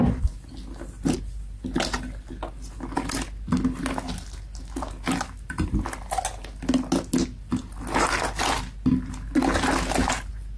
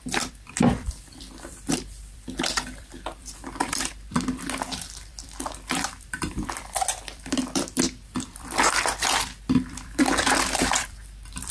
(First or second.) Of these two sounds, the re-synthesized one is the second